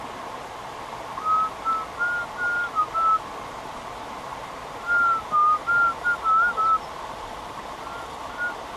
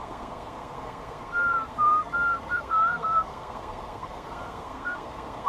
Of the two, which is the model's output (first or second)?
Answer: second